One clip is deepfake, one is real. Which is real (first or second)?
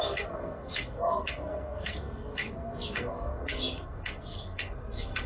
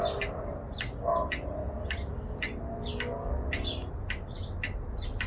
second